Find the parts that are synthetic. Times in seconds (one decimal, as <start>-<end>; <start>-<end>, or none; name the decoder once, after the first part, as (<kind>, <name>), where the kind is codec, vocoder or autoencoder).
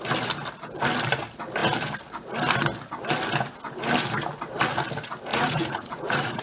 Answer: 5.3-6.4 (vocoder, Vocos)